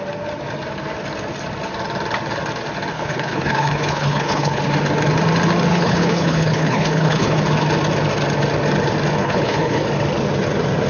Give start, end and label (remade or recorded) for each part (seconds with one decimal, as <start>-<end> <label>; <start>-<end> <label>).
0.0-2.9 recorded; 2.9-4.6 remade; 4.6-5.7 recorded; 5.7-7.4 remade; 7.4-9.2 recorded; 9.2-9.8 remade; 9.8-10.9 recorded